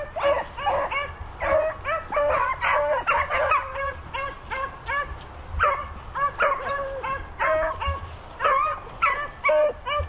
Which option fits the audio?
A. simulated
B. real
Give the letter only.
B